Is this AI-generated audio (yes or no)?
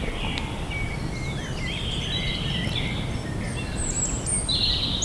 no